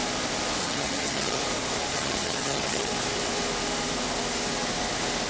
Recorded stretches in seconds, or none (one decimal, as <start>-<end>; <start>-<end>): 0.0-0.6; 1.4-1.9; 2.9-5.3